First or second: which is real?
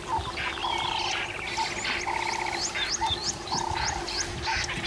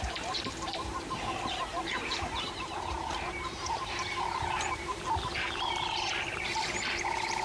first